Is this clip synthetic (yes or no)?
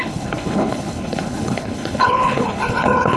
yes